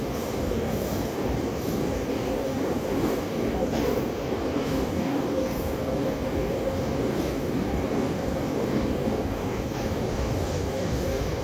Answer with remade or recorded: remade